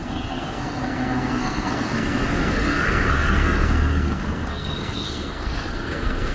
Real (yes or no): no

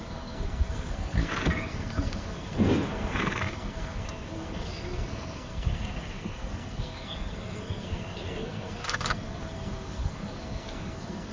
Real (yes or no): no